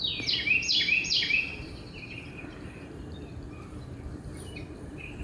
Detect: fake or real fake